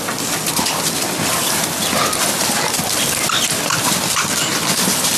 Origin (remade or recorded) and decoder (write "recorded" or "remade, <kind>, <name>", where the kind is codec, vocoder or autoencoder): recorded